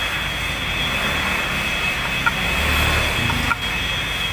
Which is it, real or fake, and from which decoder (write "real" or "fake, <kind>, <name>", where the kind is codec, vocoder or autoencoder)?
real